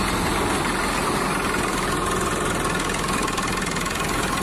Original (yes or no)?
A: yes